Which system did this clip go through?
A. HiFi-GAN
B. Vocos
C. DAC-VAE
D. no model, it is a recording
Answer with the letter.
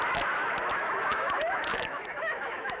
C